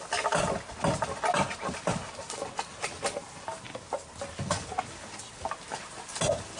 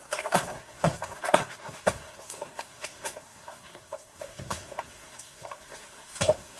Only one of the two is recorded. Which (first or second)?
first